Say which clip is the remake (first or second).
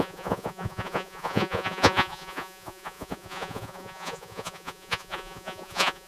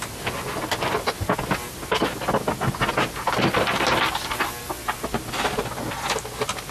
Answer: first